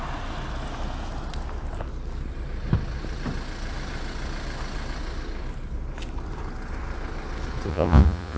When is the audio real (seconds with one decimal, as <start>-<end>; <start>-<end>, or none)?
0.0-7.7